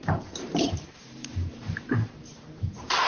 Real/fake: fake